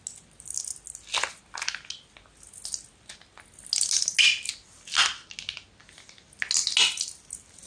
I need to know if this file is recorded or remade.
recorded